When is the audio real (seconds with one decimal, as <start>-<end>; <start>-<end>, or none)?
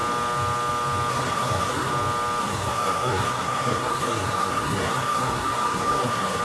0.0-1.1; 1.9-2.4